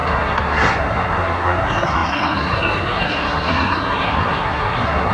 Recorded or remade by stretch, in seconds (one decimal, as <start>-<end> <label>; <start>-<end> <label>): 0.0-5.1 remade